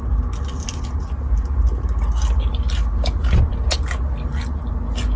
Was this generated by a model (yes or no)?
no